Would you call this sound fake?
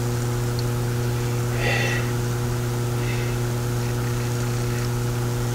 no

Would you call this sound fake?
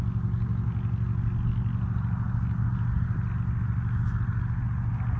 no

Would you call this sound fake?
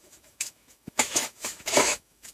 yes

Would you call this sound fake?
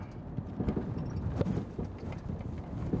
no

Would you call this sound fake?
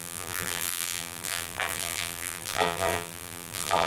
yes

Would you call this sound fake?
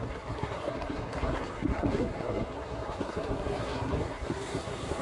yes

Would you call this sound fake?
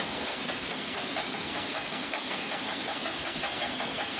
yes